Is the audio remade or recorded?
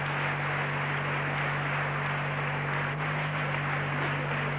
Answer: recorded